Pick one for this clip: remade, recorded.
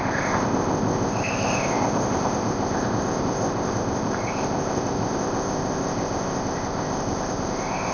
remade